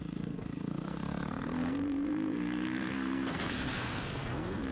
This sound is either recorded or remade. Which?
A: remade